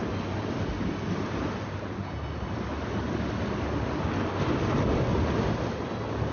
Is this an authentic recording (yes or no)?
yes